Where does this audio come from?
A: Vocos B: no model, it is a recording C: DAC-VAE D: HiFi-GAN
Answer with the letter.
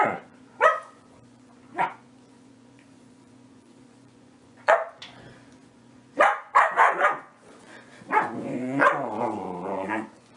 A